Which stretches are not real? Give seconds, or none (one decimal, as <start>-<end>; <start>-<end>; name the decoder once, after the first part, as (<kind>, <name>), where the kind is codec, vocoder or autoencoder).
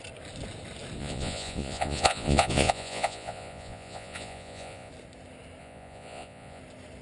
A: 1.0-4.9 (vocoder, Vocos); 5.6-6.6